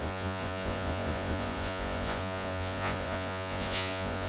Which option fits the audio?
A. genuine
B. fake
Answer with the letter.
B